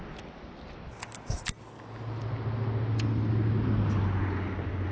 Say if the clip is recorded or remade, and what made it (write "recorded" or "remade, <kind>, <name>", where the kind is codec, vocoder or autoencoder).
recorded